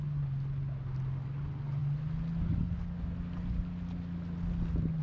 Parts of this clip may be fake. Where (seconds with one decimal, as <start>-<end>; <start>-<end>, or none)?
none